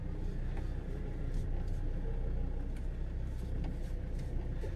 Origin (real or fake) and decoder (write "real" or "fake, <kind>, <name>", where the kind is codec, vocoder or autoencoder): real